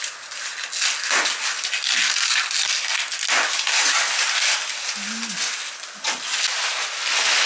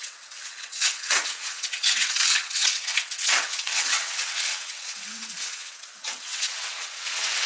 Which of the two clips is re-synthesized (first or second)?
second